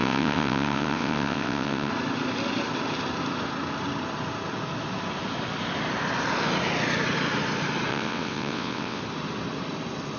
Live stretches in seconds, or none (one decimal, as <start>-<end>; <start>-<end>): 1.9-7.9; 9.0-10.2